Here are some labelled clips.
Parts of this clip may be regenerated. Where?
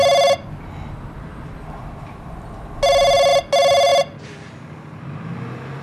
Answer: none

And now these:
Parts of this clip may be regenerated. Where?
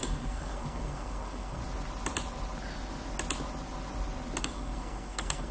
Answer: 0.0-1.6; 4.4-5.5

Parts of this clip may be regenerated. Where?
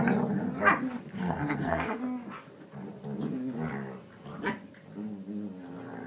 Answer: 1.2-2.0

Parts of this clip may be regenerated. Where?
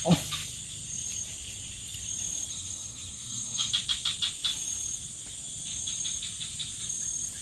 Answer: 2.5-3.7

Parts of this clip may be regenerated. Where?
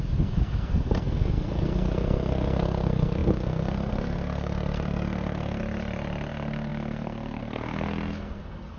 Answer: 0.0-5.6; 6.3-8.8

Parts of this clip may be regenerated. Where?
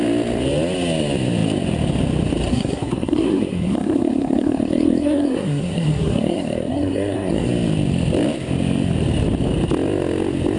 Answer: 2.5-7.5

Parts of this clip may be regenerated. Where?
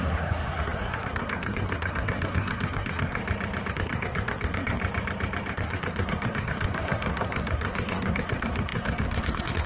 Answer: 0.0-3.2; 3.7-4.8; 5.5-9.7